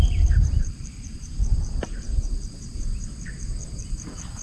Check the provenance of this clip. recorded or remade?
remade